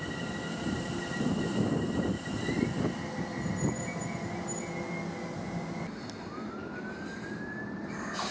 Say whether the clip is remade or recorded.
recorded